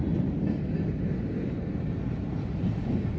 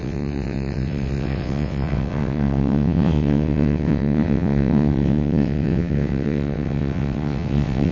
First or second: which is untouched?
first